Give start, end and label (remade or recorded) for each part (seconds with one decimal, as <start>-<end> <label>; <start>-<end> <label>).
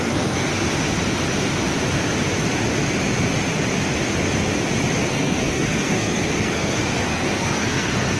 0.0-0.5 remade; 0.5-5.0 recorded; 5.0-8.2 remade